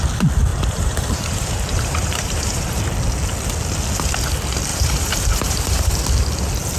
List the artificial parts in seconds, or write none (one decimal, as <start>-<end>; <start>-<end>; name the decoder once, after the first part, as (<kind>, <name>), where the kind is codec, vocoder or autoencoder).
0.5-2.8 (vocoder, BigVGAN v2); 4.7-5.9